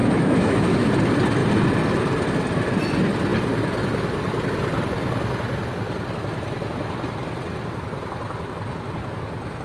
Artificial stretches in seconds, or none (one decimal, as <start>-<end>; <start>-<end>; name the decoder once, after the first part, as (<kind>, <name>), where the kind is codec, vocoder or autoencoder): 0.0-0.9 (autoencoder, DAC-VAE)